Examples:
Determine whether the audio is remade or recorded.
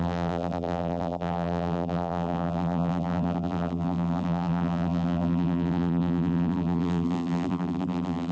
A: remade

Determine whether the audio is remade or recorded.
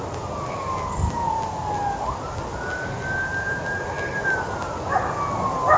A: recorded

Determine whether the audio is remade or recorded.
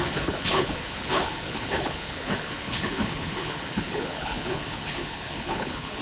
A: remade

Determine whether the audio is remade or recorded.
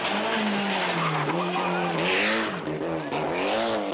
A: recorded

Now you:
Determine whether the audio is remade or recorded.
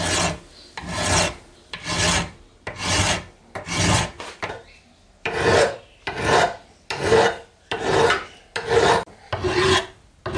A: recorded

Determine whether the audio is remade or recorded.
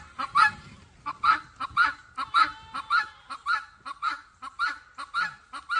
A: recorded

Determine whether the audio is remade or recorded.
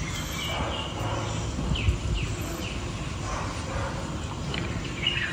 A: recorded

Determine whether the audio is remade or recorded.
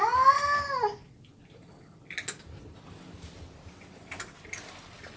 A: recorded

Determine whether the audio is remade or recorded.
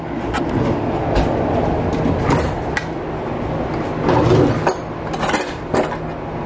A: recorded